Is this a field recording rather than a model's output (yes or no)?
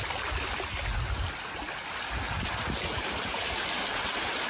yes